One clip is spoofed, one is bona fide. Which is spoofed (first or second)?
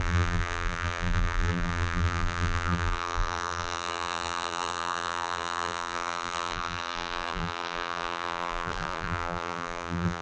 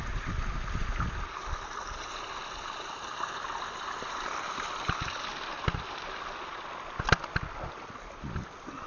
first